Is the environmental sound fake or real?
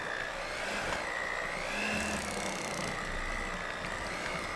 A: real